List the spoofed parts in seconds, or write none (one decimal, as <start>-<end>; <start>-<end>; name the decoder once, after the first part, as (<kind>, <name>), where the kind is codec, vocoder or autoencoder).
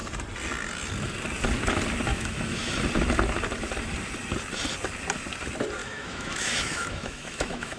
2.1-2.7 (autoencoder, DAC-VAE); 5.8-7.8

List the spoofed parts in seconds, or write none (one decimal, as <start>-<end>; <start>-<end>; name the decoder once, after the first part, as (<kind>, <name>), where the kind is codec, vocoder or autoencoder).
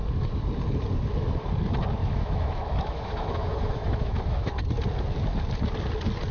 2.0-4.6 (autoencoder, DAC-VAE)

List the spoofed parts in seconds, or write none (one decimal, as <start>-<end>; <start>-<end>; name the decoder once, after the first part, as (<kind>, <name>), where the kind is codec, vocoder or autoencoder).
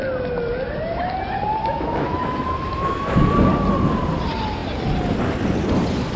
1.6-3.3 (autoencoder, DAC-VAE)